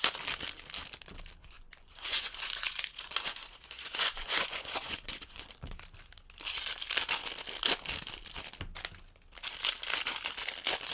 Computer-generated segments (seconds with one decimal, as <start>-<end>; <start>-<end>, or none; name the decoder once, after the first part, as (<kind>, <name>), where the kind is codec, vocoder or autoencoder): 1.4-5.8 (vocoder, Vocos)